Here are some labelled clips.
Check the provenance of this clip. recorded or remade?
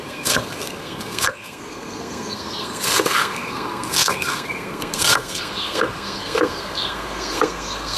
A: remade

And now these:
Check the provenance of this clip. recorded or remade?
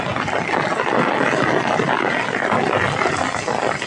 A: recorded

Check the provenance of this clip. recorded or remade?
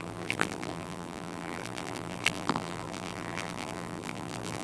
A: remade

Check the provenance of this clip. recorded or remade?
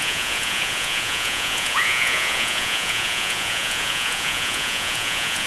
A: remade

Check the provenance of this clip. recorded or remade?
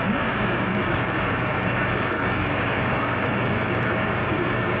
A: remade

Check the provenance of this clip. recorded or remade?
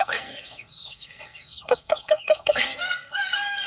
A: remade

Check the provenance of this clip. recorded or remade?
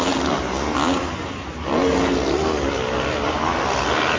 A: recorded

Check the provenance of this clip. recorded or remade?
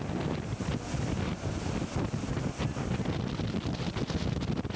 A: recorded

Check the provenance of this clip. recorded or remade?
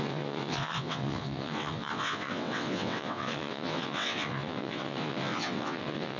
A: remade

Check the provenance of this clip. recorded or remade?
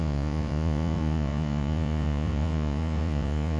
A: remade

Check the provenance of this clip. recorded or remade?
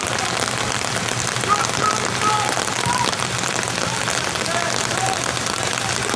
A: recorded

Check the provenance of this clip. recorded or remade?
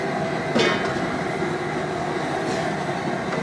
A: recorded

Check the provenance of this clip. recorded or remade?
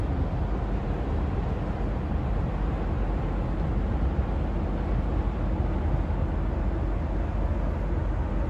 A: recorded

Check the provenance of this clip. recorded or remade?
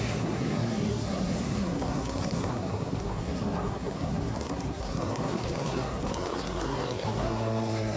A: remade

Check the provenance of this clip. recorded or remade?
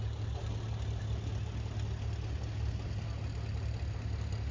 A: recorded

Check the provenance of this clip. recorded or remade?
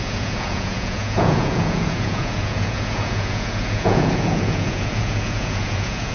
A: remade